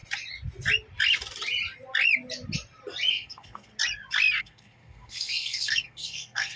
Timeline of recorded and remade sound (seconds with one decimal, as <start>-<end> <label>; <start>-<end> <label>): 0.0-3.1 recorded; 3.1-3.7 remade; 3.7-4.4 recorded; 4.4-6.6 remade